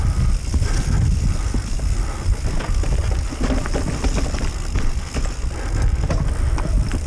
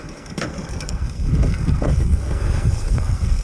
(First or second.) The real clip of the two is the first